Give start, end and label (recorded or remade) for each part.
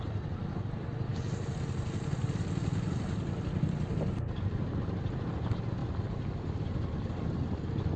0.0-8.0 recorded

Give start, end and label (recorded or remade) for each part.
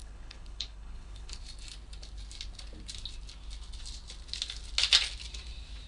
0.0-1.4 remade; 1.4-5.9 recorded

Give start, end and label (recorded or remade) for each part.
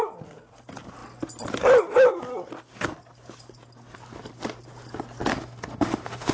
0.0-5.3 recorded; 5.3-6.3 remade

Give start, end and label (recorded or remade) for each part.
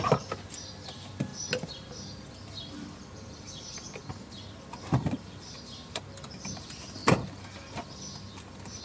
0.0-1.3 remade; 1.3-3.0 recorded; 3.0-4.0 remade; 4.0-4.6 recorded; 4.6-8.8 remade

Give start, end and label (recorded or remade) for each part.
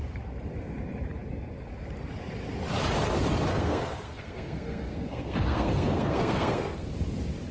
0.0-3.5 recorded; 3.5-6.9 remade; 6.9-7.5 recorded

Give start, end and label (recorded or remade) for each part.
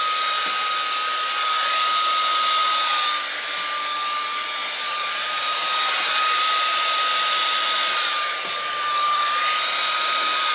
0.0-4.6 recorded; 4.6-9.4 remade; 9.4-10.5 recorded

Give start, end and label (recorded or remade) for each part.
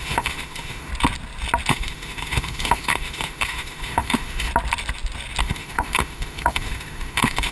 0.0-0.9 remade; 0.9-1.7 recorded; 1.7-4.5 remade; 4.5-5.4 recorded; 5.4-7.5 remade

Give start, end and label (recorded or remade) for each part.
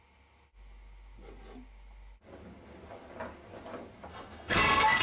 0.0-4.1 recorded; 4.1-5.0 remade